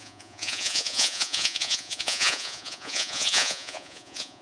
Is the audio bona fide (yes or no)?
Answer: no